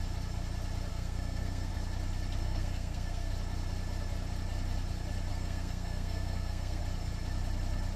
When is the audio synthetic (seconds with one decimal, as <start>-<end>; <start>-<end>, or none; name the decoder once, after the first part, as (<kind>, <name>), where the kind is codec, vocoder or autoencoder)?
0.9-1.7 (codec, SNAC); 2.4-3.3; 5.3-6.8